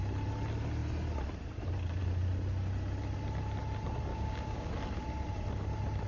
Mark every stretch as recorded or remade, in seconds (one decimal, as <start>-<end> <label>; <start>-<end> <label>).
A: 0.0-4.1 recorded; 4.1-4.7 remade; 4.7-6.1 recorded